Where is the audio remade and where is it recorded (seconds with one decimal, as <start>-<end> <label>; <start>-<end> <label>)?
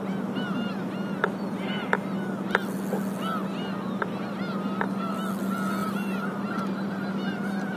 0.0-5.8 recorded; 5.8-7.1 remade; 7.1-7.8 recorded